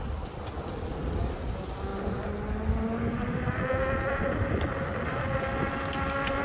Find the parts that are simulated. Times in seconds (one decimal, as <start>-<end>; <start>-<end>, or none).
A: none